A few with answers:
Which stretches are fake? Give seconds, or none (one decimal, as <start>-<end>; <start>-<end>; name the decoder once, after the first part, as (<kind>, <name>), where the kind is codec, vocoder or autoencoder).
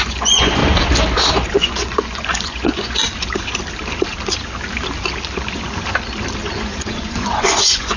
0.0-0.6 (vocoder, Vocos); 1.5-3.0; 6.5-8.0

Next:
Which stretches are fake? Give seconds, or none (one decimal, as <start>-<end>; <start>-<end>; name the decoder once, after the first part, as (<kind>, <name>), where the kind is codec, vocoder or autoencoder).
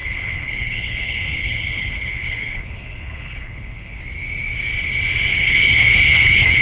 0.0-4.0 (codec, HILCodec); 5.3-6.6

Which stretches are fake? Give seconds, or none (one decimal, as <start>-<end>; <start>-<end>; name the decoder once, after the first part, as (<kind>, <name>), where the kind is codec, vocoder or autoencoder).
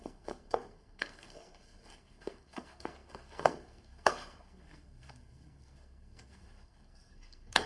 0.0-7.7 (codec, SNAC)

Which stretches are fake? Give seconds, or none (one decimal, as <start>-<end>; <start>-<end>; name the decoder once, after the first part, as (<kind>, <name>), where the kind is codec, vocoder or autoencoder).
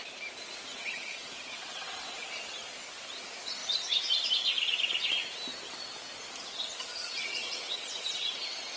0.8-2.2 (vocoder, WaveNeXt); 7.0-8.8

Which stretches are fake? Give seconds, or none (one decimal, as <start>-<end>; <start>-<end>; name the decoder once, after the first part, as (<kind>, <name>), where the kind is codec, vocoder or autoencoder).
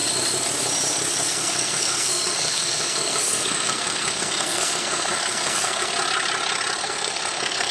1.3-5.9 (codec, SNAC); 6.8-7.7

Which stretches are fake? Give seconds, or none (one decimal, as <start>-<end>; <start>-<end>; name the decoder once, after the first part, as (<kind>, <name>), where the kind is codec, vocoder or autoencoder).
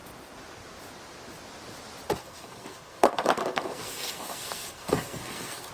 2.2-5.7 (codec, SNAC)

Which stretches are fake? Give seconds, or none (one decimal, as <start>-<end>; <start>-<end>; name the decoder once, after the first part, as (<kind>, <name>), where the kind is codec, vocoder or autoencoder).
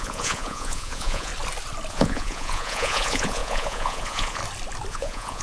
0.0-1.3 (vocoder, Vocos); 1.9-4.4; 4.9-5.4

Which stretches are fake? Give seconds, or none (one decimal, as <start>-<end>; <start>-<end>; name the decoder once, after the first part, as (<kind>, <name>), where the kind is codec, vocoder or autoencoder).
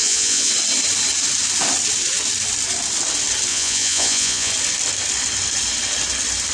0.0-0.5 (vocoder, Vocos); 3.5-4.5